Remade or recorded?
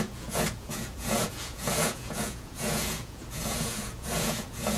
remade